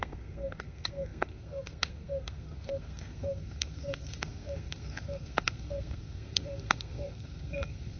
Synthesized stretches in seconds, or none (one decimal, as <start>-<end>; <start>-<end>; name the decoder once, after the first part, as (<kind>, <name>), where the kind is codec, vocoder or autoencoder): 0.0-8.0 (codec, SNAC)